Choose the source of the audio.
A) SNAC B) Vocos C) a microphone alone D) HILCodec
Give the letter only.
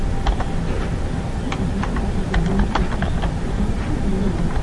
C